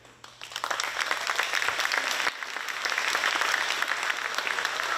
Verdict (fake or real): real